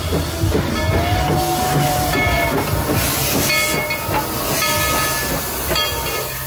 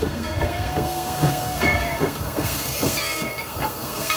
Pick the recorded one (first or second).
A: first